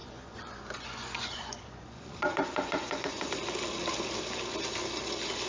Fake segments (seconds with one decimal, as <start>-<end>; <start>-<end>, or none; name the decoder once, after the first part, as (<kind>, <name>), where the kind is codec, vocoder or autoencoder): 0.0-3.3 (vocoder, Vocos)

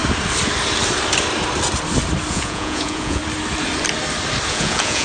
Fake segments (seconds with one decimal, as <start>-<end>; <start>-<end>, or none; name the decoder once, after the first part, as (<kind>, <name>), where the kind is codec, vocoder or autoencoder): 2.3-3.2 (vocoder, Vocos); 4.5-5.0

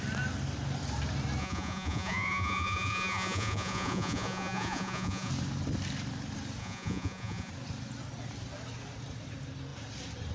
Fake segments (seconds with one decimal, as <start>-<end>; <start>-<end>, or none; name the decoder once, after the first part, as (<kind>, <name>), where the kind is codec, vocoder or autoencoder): 1.4-5.3 (vocoder, Vocos); 6.6-7.5

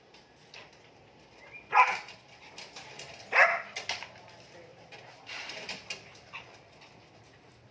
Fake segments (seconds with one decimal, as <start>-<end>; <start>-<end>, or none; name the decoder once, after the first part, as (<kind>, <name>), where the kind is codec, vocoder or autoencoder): none